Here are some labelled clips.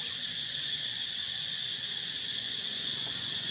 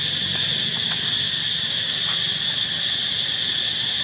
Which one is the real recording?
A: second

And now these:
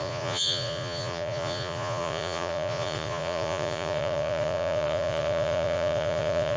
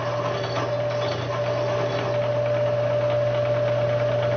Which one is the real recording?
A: second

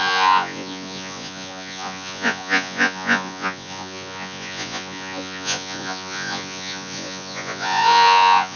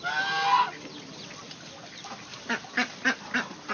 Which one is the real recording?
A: second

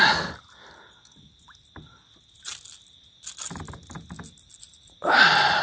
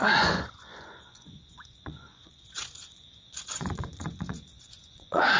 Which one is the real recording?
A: first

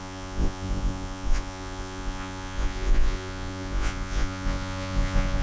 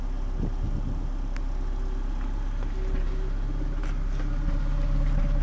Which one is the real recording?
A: second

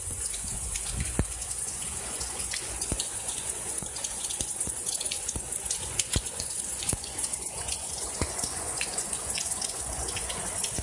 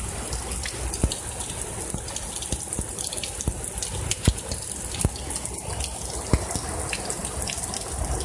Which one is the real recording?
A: second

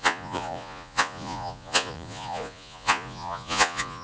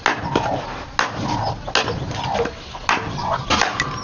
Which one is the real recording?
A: second